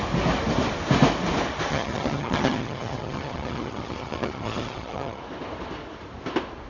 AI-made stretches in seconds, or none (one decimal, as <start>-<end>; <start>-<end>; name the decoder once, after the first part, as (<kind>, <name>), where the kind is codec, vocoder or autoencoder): 1.7-5.2 (vocoder, HiFi-GAN)